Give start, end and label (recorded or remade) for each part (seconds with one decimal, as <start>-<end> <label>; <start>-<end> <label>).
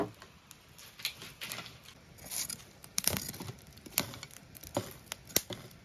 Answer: 0.0-2.8 recorded; 2.8-5.1 remade; 5.1-5.8 recorded